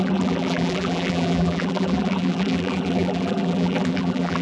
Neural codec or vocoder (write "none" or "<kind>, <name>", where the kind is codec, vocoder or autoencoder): vocoder, BigVGAN v2